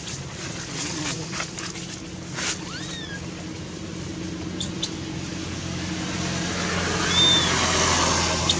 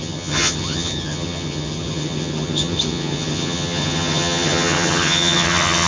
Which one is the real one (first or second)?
first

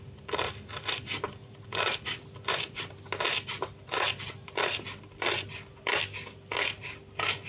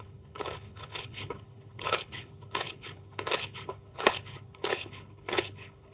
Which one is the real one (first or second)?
first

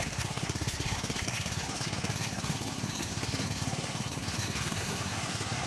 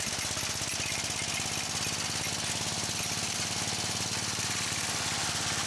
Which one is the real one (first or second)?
second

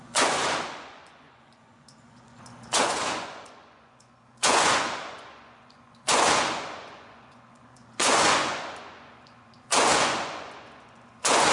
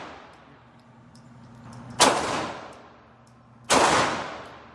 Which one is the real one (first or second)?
second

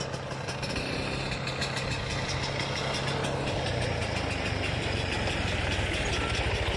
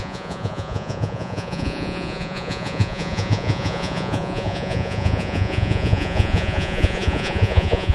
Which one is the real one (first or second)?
first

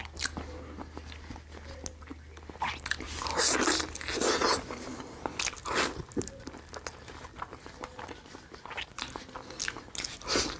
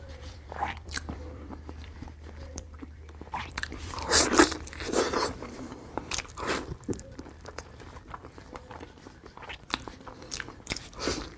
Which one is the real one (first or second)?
first